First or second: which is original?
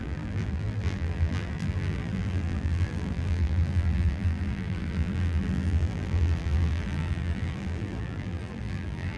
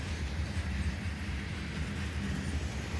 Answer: second